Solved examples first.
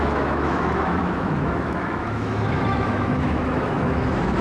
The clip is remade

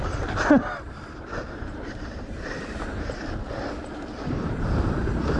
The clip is remade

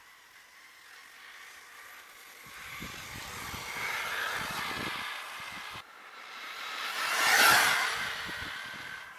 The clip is recorded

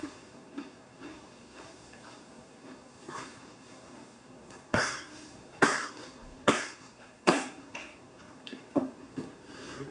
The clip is remade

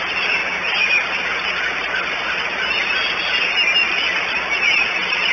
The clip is recorded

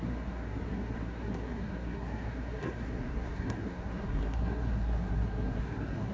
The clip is remade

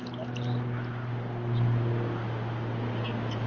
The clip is recorded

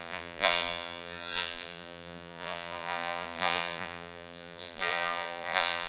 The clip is remade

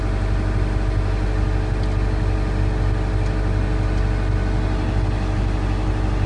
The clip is recorded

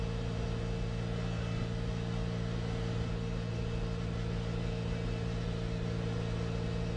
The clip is recorded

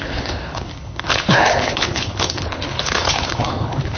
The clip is remade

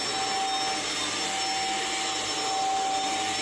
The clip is recorded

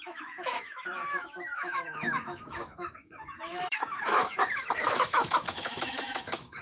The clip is remade